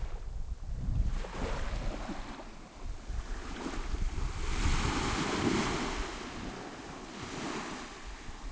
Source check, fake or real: real